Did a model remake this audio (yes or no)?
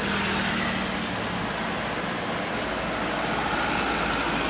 no